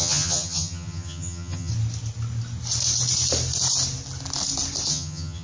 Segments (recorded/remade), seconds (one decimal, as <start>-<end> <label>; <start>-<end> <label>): 0.0-1.7 remade; 1.7-4.9 recorded; 4.9-5.4 remade